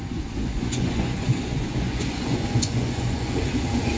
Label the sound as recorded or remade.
remade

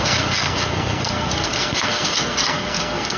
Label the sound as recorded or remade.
remade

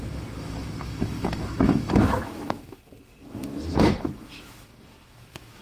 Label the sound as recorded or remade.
remade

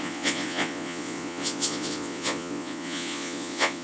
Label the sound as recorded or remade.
remade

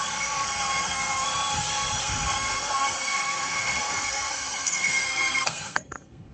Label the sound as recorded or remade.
remade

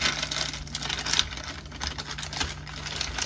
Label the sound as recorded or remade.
recorded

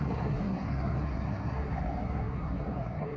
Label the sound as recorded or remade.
remade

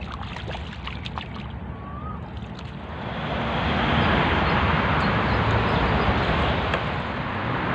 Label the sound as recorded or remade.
recorded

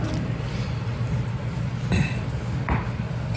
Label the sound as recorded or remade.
recorded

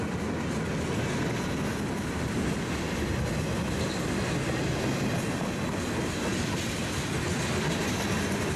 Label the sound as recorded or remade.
recorded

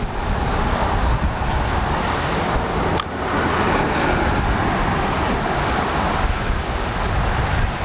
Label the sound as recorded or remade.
recorded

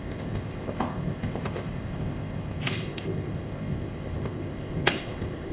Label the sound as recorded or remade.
remade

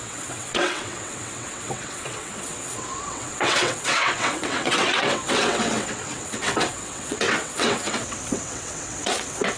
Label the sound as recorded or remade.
remade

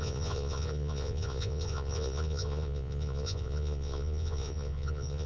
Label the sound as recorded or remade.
remade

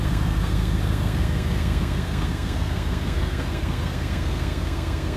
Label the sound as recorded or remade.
remade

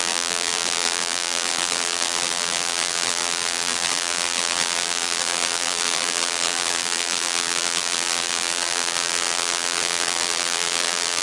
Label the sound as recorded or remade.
remade